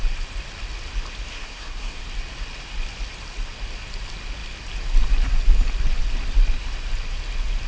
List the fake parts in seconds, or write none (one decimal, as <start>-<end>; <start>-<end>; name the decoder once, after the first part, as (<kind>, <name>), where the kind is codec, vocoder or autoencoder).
1.3-2.0 (codec, SNAC)